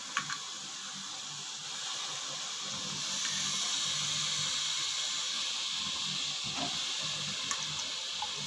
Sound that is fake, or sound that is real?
real